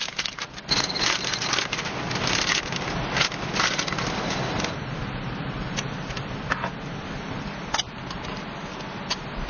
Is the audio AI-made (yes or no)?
no